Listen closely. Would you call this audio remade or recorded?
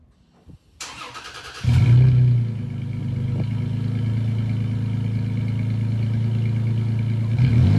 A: recorded